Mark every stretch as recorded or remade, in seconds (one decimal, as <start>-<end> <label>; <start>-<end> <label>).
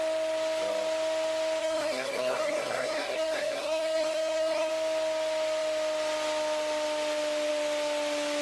0.0-1.6 recorded; 1.6-4.7 remade; 4.7-8.4 recorded